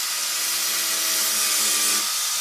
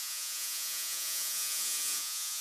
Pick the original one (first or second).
first